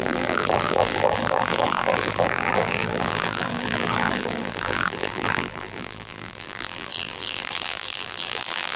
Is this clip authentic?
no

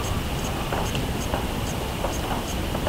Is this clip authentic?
no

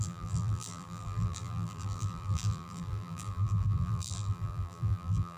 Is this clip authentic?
no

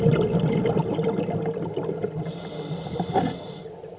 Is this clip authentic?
yes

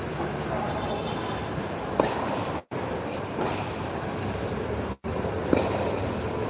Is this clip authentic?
no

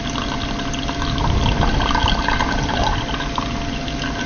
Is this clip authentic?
yes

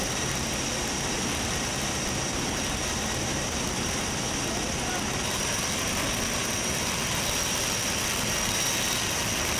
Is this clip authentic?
yes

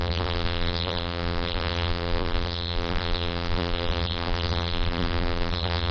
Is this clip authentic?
no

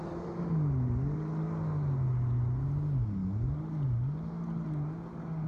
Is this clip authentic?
yes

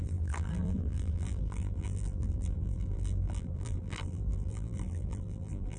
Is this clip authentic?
no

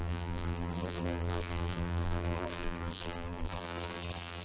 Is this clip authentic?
no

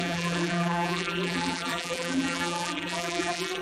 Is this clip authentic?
no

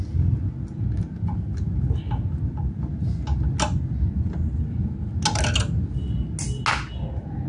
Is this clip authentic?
yes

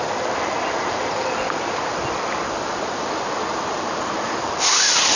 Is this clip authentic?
no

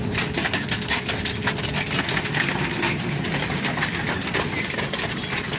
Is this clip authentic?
yes